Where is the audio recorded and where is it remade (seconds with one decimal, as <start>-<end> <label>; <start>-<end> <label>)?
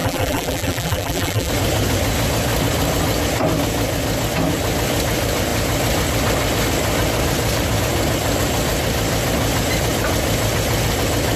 0.0-1.5 remade; 1.5-11.4 recorded